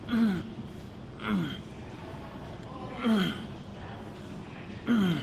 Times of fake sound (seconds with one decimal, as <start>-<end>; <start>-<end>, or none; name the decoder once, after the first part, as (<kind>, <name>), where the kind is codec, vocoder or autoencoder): 2.8-3.3 (codec, DAC)